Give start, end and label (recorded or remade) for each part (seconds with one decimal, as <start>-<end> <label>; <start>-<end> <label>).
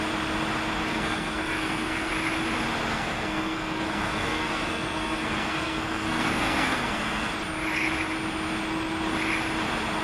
0.0-0.9 recorded; 0.9-2.1 remade; 2.1-2.9 recorded; 2.9-7.3 remade; 7.3-10.0 recorded